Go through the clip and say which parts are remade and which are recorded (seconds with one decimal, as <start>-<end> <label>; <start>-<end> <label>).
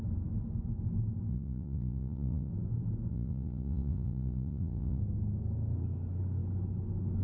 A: 0.0-1.3 recorded; 1.3-2.5 remade; 2.5-3.1 recorded; 3.1-5.0 remade; 5.0-7.2 recorded